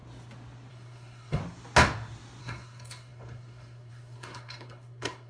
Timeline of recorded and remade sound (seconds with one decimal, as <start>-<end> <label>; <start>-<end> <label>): 0.0-0.7 recorded; 0.7-1.4 remade; 1.4-2.4 recorded; 2.4-5.3 remade